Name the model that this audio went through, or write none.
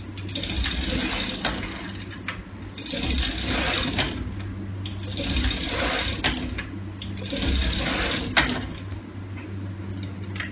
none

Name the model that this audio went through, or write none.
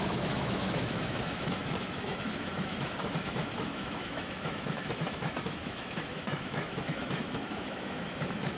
autoencoder, DAC-VAE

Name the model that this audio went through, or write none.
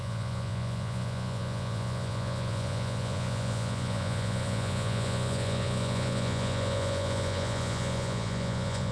vocoder, Vocos